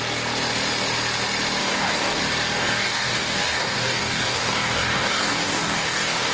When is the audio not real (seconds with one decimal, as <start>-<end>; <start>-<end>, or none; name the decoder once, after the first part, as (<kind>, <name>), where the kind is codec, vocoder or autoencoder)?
1.6-2.2 (codec, DAC); 2.6-6.3